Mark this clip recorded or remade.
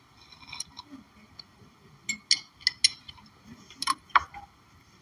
recorded